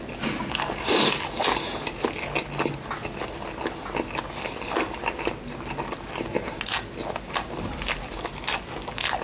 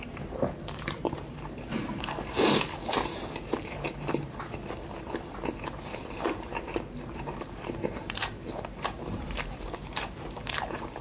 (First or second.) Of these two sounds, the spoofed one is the second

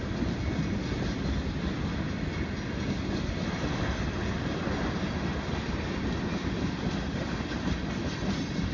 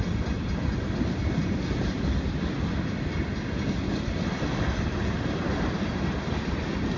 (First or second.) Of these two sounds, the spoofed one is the second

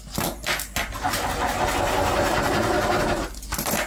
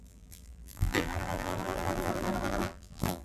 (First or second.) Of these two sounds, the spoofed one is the second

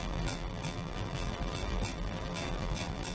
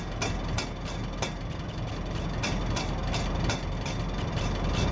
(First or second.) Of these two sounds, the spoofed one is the first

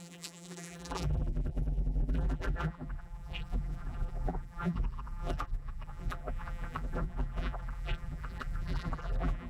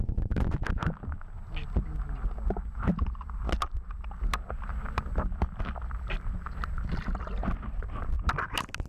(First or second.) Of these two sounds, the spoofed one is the first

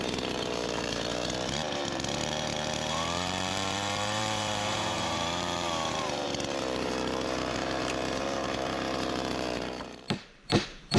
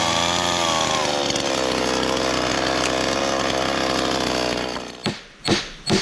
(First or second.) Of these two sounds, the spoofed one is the first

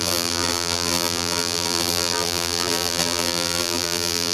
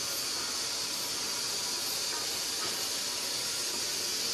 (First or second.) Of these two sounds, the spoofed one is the first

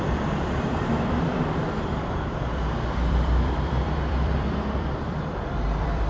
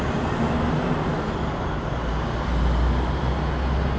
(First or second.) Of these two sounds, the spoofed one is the first